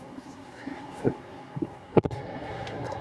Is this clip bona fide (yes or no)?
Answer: no